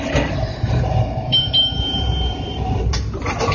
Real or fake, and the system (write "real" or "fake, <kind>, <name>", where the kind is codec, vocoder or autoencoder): fake, vocoder, BigVGAN v2